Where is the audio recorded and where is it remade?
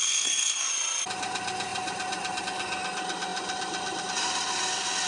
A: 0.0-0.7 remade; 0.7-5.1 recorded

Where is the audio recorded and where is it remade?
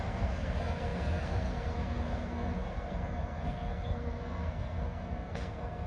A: 0.0-5.9 remade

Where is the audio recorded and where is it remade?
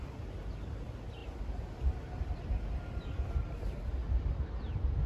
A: 0.0-5.1 recorded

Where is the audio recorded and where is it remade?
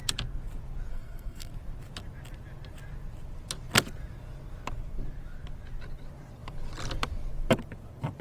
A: 0.0-0.9 recorded; 0.9-1.5 remade; 1.5-8.2 recorded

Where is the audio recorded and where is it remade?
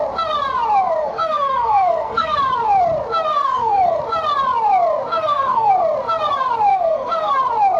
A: 0.0-1.0 recorded; 1.0-2.4 remade; 2.4-3.3 recorded; 3.3-4.0 remade; 4.0-5.1 recorded; 5.1-5.7 remade; 5.7-6.7 recorded; 6.7-7.3 remade; 7.3-7.8 recorded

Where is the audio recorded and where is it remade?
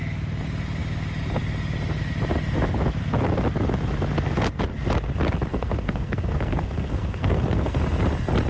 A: 0.0-5.5 recorded; 5.5-7.8 remade; 7.8-8.5 recorded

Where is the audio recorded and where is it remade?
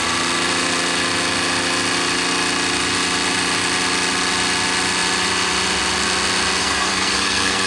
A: 0.0-6.6 recorded; 6.6-7.7 remade